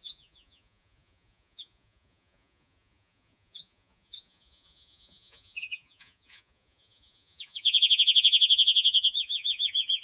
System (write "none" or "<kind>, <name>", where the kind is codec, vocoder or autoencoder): vocoder, Vocos